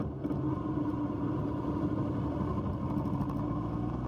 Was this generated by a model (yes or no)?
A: no